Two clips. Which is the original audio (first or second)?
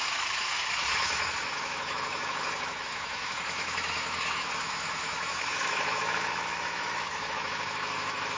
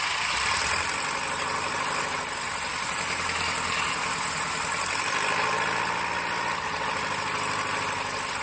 second